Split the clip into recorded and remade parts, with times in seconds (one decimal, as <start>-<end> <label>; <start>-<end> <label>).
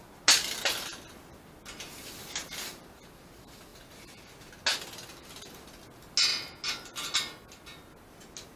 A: 0.0-8.6 recorded